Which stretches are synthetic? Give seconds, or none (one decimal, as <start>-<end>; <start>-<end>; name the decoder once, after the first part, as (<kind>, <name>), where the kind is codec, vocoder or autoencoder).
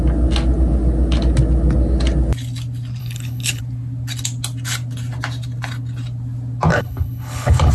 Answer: 3.0-3.6 (codec, HILCodec); 6.7-7.7